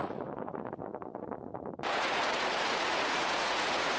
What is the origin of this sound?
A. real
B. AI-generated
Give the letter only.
B